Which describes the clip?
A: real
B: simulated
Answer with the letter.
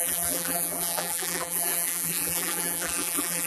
B